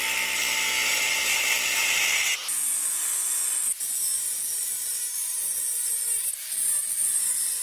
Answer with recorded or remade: recorded